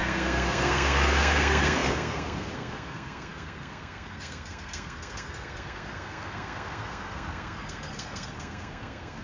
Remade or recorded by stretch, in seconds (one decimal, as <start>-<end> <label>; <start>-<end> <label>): 0.0-9.2 remade